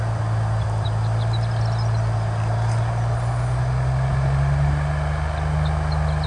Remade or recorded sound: recorded